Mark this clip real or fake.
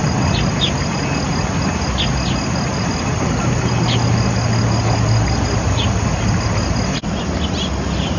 real